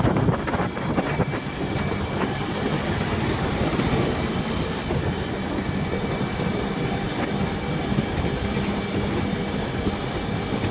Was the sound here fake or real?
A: real